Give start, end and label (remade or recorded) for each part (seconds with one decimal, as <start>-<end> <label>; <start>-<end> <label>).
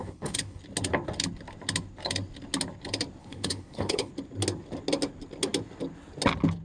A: 0.0-0.6 remade; 0.6-3.2 recorded; 3.2-4.1 remade; 4.1-6.6 recorded